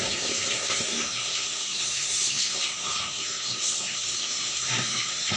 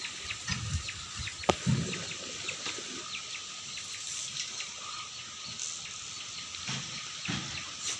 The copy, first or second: first